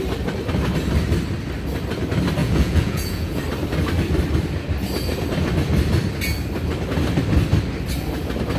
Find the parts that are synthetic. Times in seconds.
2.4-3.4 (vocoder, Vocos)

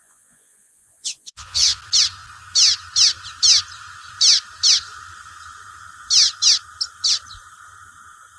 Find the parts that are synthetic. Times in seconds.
0.0-1.8 (vocoder, Vocos)

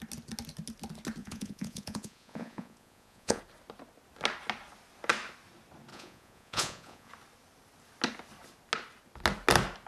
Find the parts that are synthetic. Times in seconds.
1.2-3.4 (vocoder, Vocos); 5.9-7.1

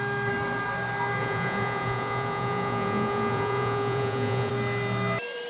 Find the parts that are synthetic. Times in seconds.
1.2-4.5 (vocoder, Vocos)

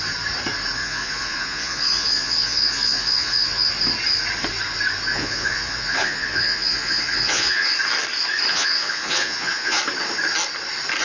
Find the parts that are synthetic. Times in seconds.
0.8-3.7 (vocoder, Vocos); 5.1-7.7; 8.5-9.8

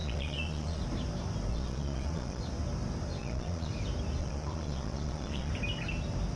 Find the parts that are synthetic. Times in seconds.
0.0-0.8 (vocoder, Vocos); 1.5-2.4; 3.2-3.7; 4.2-5.5

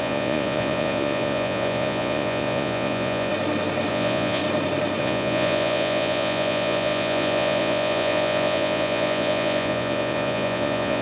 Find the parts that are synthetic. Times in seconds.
0.0-3.3 (vocoder, Vocos); 3.9-4.4; 5.0-11.0

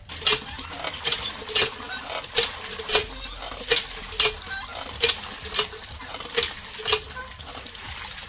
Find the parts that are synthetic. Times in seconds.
none